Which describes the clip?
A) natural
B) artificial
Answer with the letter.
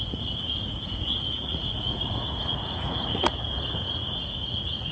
B